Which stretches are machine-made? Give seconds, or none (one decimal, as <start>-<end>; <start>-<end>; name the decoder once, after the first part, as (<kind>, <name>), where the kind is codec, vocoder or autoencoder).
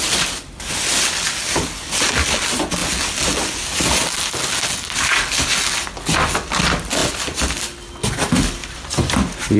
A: 8.6-9.1 (vocoder, BigVGAN v2)